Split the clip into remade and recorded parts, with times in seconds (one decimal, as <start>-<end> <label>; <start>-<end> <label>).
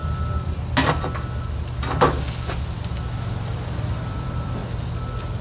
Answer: 0.0-3.2 recorded; 3.2-4.6 remade; 4.6-5.4 recorded